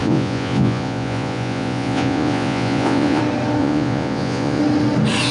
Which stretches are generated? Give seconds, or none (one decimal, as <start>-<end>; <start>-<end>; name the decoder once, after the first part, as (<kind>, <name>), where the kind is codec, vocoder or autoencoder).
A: 0.0-3.2 (vocoder, Vocos); 3.6-4.6